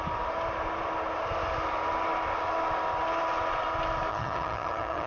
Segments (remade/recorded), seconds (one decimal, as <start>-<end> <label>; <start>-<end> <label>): 0.0-4.1 recorded; 4.1-5.1 remade